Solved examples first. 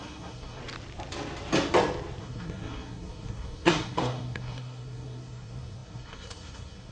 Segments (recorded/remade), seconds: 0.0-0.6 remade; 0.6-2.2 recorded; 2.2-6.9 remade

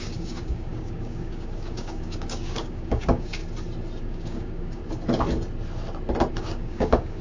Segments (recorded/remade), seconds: 0.0-3.4 remade; 3.4-4.0 recorded; 4.0-4.8 remade; 4.8-6.3 recorded; 6.3-7.2 remade

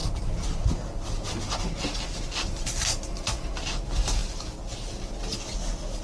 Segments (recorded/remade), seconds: 0.0-6.0 recorded

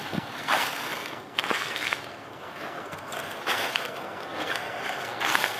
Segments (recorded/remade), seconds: 0.0-5.6 remade

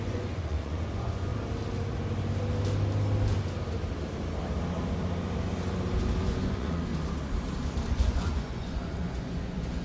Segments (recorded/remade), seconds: 0.0-1.3 remade; 1.3-6.2 recorded; 6.2-6.9 remade; 6.9-7.9 recorded; 7.9-9.8 remade